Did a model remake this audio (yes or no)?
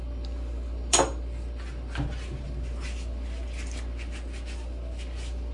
no